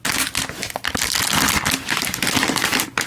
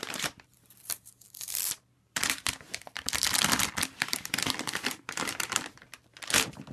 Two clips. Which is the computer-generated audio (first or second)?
second